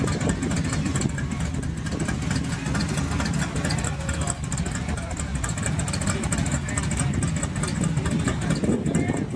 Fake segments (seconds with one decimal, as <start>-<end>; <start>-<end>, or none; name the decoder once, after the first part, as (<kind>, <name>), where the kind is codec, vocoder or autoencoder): none